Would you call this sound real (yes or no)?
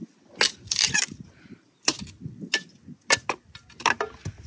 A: yes